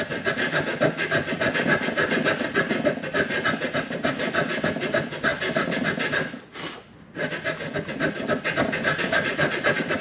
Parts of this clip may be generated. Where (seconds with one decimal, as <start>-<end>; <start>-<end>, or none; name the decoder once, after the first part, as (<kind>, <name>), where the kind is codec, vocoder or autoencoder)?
none